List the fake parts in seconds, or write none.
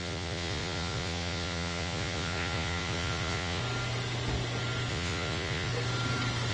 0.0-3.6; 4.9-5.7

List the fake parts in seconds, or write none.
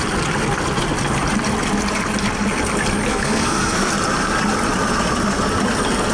3.1-3.9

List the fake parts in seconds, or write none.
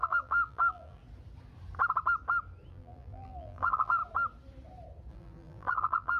0.0-1.0; 2.7-4.0; 5.1-6.2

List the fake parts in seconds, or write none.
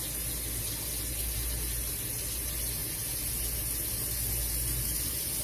none